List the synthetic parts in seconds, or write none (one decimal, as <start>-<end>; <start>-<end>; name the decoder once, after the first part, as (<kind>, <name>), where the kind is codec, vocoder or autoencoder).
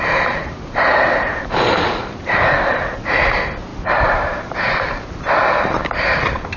0.4-1.4 (vocoder, BigVGAN v2); 3.7-4.4